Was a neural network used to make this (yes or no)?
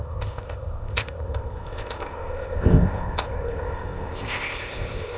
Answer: yes